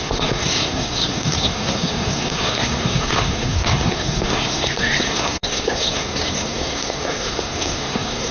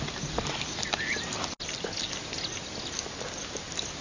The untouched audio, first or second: second